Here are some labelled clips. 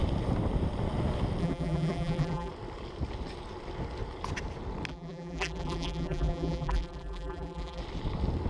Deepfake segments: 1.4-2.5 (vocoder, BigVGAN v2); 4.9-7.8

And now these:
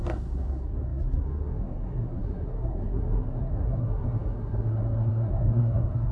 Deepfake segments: 0.0-6.1 (codec, SNAC)